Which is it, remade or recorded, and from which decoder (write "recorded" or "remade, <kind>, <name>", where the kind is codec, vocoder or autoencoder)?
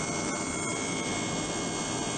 recorded